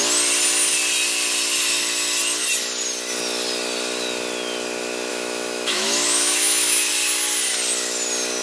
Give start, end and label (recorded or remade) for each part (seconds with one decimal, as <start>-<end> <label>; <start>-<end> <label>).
0.0-5.1 recorded; 5.1-6.9 remade; 6.9-8.4 recorded